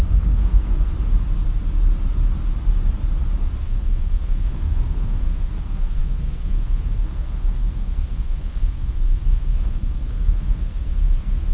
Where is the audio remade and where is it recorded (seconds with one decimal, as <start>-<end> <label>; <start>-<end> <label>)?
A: 0.0-0.9 remade; 0.9-3.6 recorded; 3.6-11.5 remade